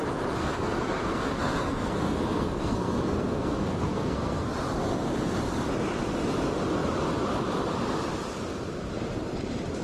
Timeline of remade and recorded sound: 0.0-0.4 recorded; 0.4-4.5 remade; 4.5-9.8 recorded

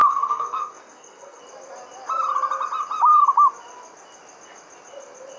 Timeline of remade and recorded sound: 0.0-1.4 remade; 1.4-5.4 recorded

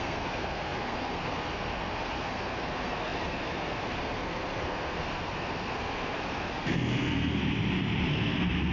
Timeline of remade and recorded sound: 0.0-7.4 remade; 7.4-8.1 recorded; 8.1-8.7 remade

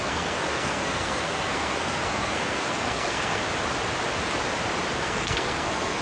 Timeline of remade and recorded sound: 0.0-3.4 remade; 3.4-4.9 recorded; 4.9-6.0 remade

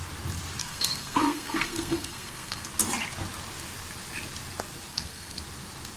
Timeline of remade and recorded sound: 0.0-0.6 recorded; 0.6-2.7 remade; 2.7-4.9 recorded; 4.9-5.4 remade; 5.4-6.0 recorded

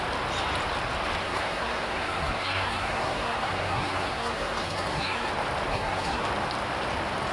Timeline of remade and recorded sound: 0.0-1.2 recorded; 1.2-5.3 remade; 5.3-5.7 recorded; 5.7-6.2 remade; 6.2-7.3 recorded